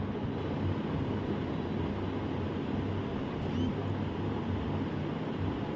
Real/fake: real